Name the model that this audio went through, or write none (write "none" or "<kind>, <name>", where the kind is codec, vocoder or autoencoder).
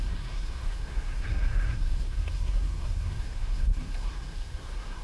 codec, SNAC